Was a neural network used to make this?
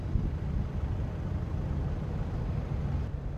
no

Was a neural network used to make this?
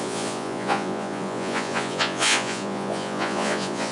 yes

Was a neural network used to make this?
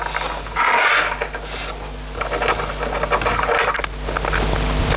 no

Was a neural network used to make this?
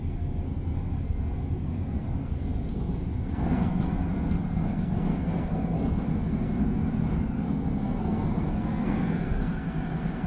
yes